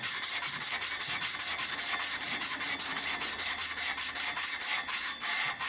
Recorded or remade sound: remade